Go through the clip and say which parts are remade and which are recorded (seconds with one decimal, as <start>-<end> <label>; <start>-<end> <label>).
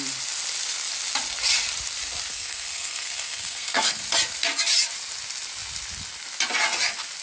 0.0-2.3 recorded; 2.3-4.0 remade; 4.0-7.2 recorded